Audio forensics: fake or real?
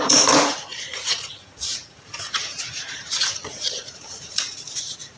fake